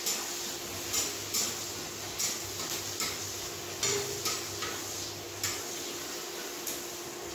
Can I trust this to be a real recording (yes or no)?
yes